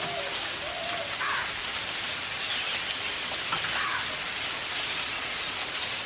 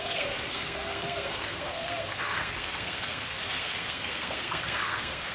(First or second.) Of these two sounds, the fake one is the second